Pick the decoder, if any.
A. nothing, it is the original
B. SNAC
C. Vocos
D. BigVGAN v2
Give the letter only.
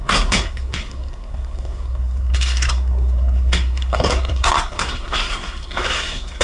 B